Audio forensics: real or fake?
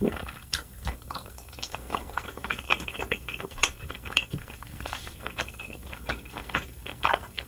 fake